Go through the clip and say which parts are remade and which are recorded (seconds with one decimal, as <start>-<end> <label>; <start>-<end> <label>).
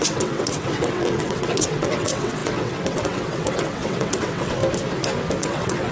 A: 0.0-4.6 remade; 4.6-5.4 recorded; 5.4-5.9 remade